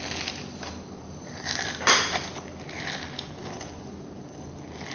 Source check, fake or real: real